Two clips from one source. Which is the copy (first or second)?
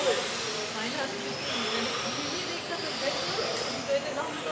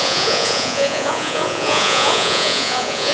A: second